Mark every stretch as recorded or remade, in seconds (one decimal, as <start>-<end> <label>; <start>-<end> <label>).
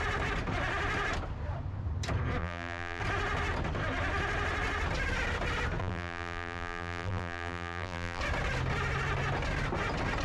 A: 0.0-2.4 recorded; 2.4-3.0 remade; 3.0-5.8 recorded; 5.8-8.2 remade; 8.2-10.2 recorded